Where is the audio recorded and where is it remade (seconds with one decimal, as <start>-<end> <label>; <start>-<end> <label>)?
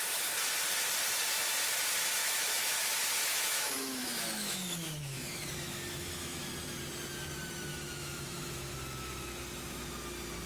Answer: 0.0-2.2 recorded; 2.2-6.5 remade; 6.5-7.7 recorded; 7.7-8.7 remade; 8.7-10.5 recorded